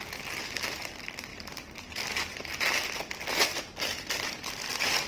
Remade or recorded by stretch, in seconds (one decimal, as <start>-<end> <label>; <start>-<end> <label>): 0.0-5.1 recorded